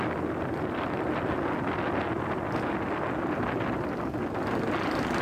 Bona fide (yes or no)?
yes